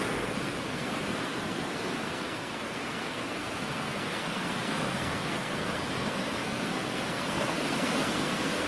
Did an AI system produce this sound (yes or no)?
yes